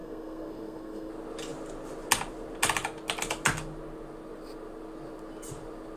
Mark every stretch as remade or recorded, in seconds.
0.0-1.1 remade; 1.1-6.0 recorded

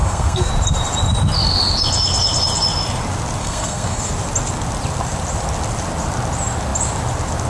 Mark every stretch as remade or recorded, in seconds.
0.0-0.5 remade; 0.5-3.4 recorded; 3.4-4.1 remade; 4.1-7.5 recorded

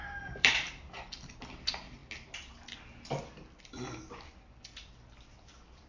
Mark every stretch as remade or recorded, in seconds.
0.0-5.9 recorded

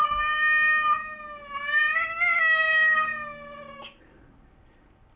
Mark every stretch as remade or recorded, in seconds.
0.0-5.2 recorded